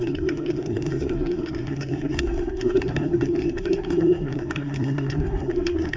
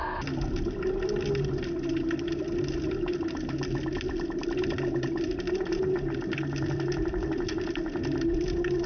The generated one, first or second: first